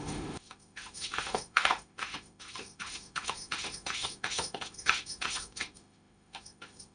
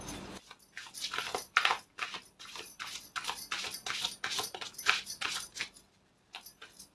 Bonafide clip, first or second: second